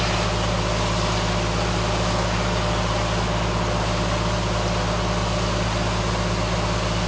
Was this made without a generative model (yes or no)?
yes